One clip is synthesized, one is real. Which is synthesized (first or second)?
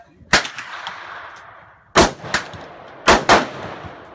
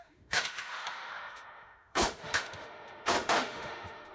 second